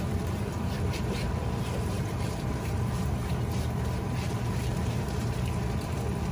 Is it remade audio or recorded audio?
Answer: remade